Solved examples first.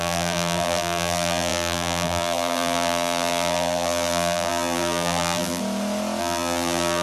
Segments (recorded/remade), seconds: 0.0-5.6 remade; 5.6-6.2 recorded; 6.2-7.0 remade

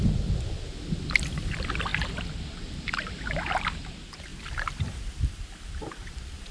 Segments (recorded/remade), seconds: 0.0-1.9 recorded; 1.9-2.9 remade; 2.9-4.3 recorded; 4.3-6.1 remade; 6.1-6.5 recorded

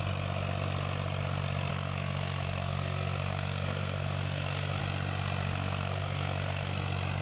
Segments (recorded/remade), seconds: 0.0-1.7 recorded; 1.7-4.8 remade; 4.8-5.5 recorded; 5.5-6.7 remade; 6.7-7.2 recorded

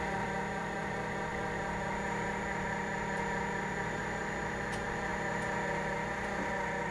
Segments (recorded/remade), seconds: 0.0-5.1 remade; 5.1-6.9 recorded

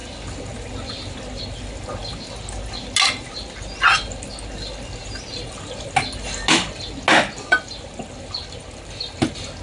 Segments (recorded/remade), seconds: 0.0-9.6 recorded

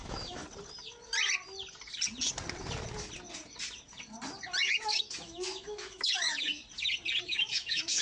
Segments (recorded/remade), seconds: 0.0-0.4 remade; 0.4-4.6 recorded; 4.6-6.6 remade; 6.6-7.2 recorded; 7.2-8.0 remade